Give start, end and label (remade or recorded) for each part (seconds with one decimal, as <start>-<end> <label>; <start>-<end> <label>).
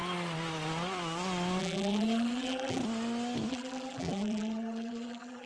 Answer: 0.0-1.6 recorded; 1.6-2.8 remade; 2.8-3.5 recorded; 3.5-5.5 remade